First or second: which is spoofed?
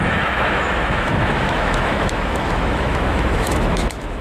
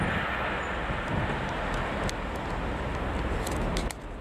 first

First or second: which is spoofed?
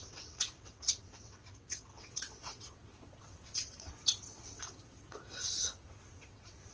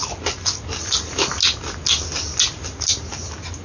first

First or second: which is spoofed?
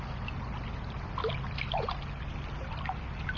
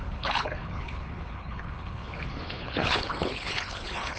second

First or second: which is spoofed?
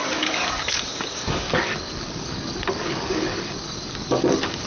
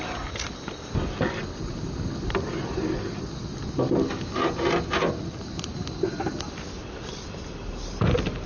first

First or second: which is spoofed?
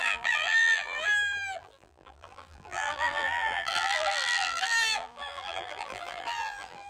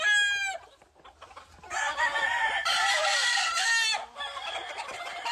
first